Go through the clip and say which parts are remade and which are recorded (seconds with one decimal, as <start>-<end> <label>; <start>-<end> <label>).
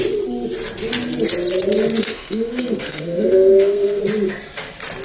0.0-2.0 recorded; 2.0-4.0 remade; 4.0-5.0 recorded